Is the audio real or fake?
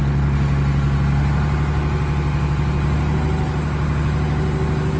real